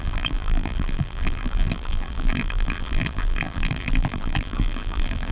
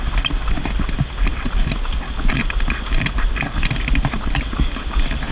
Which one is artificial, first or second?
first